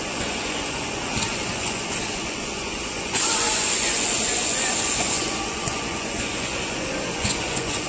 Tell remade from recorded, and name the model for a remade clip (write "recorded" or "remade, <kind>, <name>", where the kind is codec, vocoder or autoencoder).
remade, vocoder, Vocos